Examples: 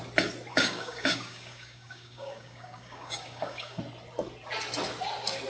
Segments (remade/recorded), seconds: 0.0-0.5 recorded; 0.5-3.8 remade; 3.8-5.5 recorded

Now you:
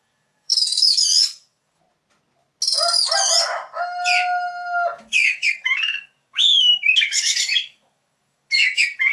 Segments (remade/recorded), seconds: 0.0-1.8 remade; 1.8-5.0 recorded; 5.0-9.1 remade